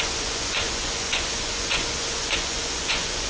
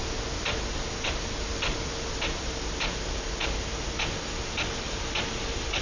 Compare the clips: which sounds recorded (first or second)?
second